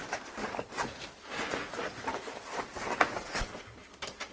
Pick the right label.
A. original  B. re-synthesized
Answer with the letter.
A